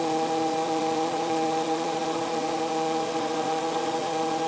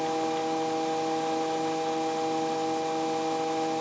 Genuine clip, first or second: second